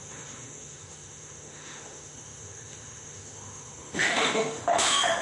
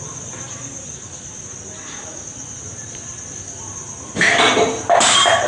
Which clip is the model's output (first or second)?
first